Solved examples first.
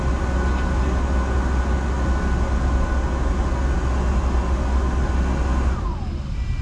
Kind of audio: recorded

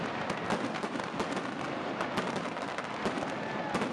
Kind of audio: recorded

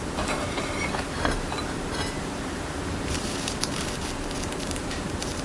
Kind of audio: remade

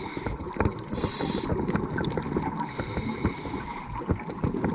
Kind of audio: remade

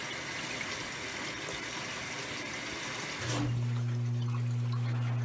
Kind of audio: recorded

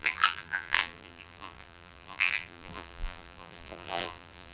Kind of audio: remade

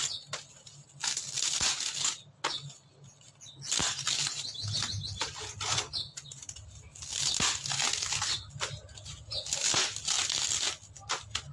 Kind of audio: recorded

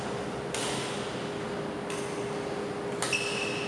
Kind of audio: recorded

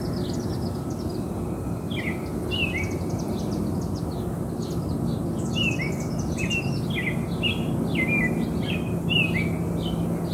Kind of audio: recorded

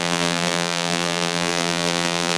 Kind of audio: remade